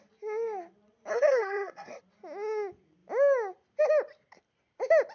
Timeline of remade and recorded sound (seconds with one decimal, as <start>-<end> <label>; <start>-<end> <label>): 0.0-1.1 recorded; 1.1-2.0 remade; 2.0-5.1 recorded

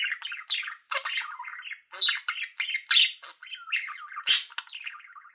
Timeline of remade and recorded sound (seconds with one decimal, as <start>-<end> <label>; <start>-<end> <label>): 0.0-5.3 recorded

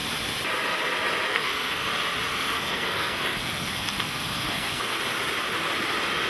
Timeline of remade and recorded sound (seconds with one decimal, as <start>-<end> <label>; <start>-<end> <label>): 0.0-1.3 recorded; 1.3-1.9 remade; 1.9-2.3 recorded; 2.3-5.0 remade; 5.0-6.3 recorded